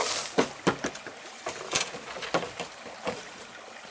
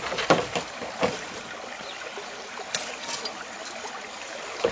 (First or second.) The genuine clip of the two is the first